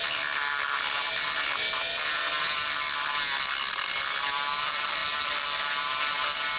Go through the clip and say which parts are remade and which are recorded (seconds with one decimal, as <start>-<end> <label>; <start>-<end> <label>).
0.0-6.6 recorded